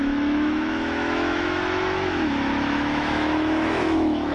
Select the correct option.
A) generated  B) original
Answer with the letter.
A